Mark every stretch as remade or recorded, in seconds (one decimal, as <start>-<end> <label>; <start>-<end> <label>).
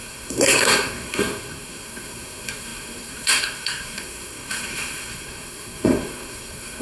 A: 0.0-6.8 remade